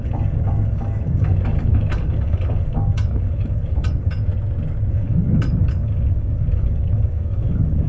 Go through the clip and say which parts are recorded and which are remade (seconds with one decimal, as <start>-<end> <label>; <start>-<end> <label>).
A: 0.0-4.3 remade; 4.3-4.9 recorded; 4.9-7.9 remade